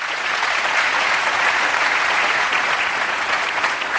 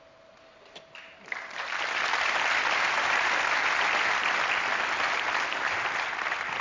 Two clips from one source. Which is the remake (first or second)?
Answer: first